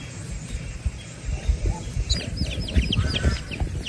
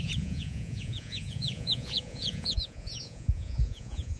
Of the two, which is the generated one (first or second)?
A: second